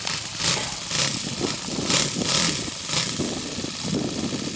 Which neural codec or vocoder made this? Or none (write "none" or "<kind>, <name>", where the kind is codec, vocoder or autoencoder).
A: none